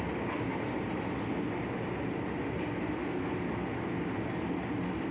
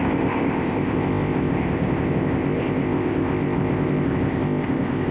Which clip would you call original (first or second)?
first